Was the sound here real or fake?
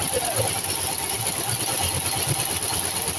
real